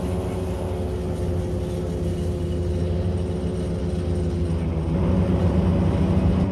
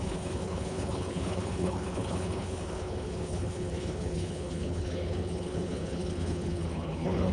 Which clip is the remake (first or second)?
second